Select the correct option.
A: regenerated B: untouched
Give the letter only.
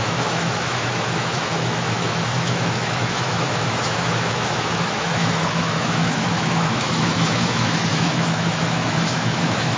A